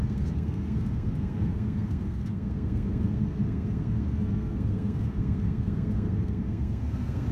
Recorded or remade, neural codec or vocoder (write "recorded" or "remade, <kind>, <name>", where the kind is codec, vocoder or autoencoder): remade, codec, SNAC